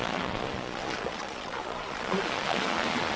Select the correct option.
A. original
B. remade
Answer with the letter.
B